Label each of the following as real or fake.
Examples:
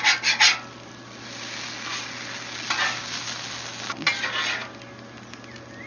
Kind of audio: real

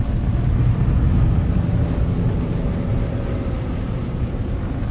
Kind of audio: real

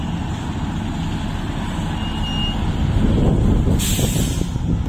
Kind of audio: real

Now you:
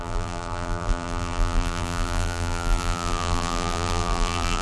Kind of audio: fake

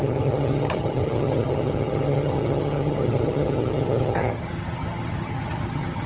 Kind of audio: fake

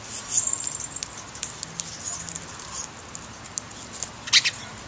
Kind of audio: real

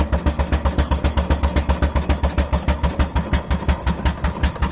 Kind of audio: real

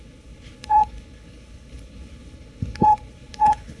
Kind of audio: fake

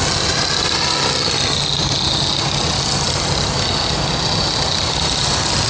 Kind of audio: real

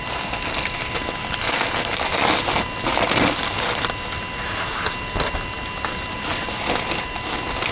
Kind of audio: real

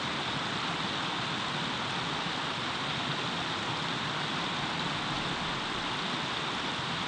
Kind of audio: real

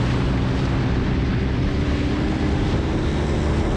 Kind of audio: real